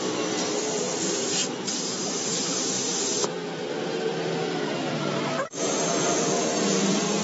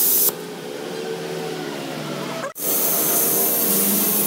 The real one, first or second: second